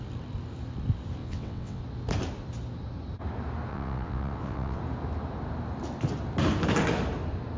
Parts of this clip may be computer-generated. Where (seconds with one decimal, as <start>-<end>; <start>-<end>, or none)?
1.2-1.8; 3.7-4.8